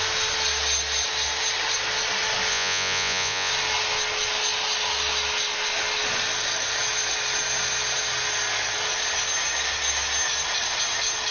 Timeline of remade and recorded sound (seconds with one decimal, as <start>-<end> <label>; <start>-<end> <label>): 0.0-2.5 recorded; 2.5-3.5 remade; 3.5-11.3 recorded